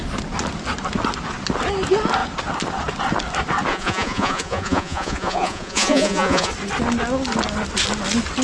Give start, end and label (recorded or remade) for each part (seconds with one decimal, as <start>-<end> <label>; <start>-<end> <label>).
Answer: 0.0-3.7 recorded; 3.7-6.5 remade; 6.5-8.4 recorded